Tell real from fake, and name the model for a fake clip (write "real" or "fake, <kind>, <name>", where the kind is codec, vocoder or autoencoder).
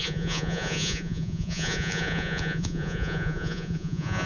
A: fake, vocoder, Vocos